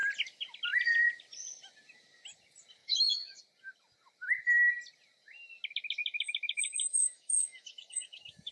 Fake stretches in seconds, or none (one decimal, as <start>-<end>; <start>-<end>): 2.8-3.4; 6.0-8.5